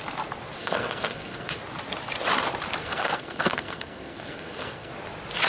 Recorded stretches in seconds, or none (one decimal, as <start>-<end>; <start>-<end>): 0.0-0.6; 1.6-2.8; 4.9-5.5